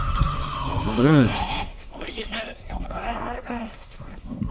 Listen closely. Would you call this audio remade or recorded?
remade